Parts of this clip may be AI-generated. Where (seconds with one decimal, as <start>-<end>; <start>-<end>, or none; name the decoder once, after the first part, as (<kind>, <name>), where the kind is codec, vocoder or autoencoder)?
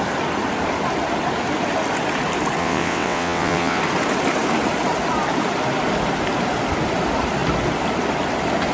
2.6-3.8 (vocoder, WaveNeXt)